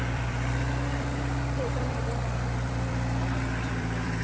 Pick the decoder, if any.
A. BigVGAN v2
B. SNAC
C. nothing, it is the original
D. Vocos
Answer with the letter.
A